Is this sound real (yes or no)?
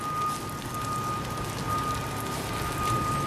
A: yes